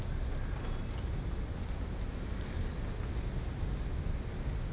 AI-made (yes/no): no